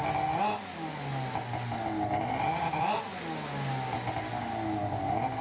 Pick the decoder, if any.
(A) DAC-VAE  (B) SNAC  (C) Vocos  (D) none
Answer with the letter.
D